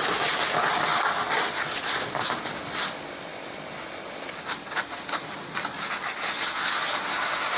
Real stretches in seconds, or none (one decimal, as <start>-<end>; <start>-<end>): 0.0-7.6